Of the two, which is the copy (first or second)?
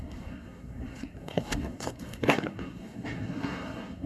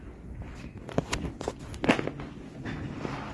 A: first